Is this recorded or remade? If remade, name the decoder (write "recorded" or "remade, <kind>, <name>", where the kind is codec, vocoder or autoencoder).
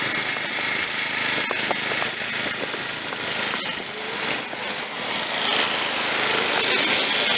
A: recorded